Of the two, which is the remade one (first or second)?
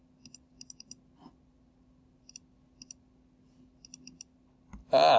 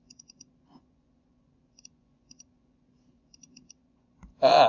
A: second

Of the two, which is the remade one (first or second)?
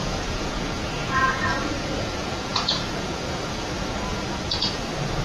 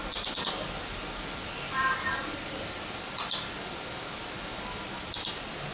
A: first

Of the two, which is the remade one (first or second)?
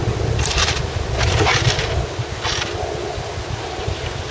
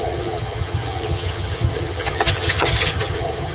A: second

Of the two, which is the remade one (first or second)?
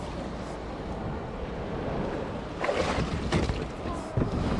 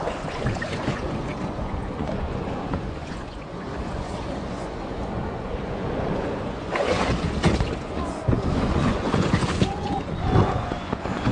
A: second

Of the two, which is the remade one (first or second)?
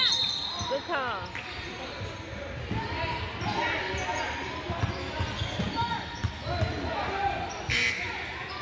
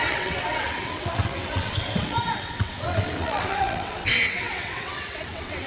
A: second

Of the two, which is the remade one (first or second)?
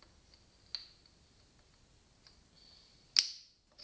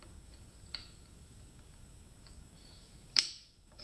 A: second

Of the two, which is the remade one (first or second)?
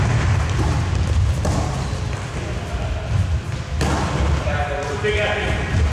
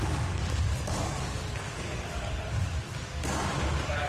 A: second